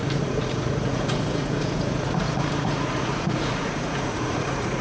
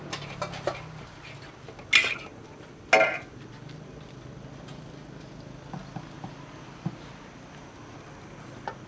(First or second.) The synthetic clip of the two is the first